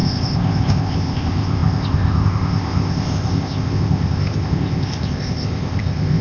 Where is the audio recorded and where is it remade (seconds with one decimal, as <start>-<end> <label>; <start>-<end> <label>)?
0.0-6.2 remade